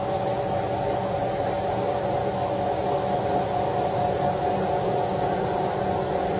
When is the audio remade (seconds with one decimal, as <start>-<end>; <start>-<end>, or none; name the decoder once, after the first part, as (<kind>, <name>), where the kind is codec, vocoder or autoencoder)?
2.2-3.2 (autoencoder, DAC-VAE)